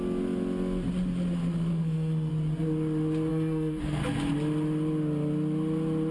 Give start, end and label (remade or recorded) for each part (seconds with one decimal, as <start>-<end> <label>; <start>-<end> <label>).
0.0-1.7 recorded; 1.7-2.3 remade; 2.3-3.3 recorded; 3.3-4.0 remade; 4.0-6.1 recorded